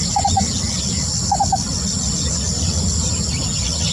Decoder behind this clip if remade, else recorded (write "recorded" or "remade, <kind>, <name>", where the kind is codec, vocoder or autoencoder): recorded